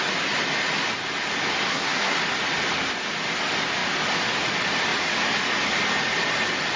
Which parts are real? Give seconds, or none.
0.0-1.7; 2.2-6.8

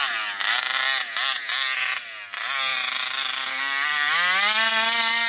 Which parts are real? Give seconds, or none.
0.0-5.3

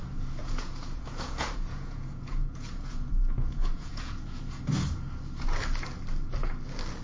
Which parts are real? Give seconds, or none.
0.0-0.4; 4.6-7.0

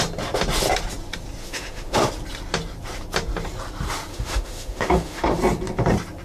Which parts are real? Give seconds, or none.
0.0-1.4; 2.1-4.1; 5.4-6.2

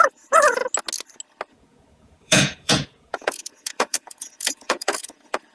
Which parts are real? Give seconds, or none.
0.6-1.5

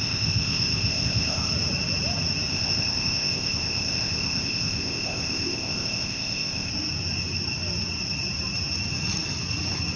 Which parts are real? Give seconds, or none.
1.5-2.5; 6.7-10.0

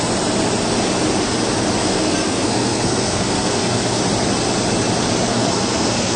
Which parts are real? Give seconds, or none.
0.0-1.8; 4.0-5.3

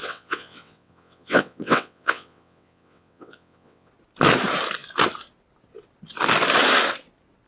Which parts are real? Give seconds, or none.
3.9-7.5